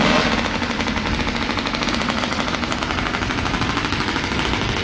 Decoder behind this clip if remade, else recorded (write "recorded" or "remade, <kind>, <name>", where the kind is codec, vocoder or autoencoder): recorded